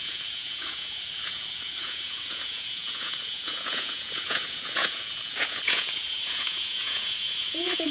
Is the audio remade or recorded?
remade